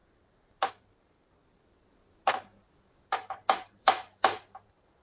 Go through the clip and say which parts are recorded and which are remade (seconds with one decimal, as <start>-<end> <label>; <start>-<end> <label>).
0.0-0.7 recorded; 0.7-1.4 remade; 1.4-3.7 recorded; 3.7-5.0 remade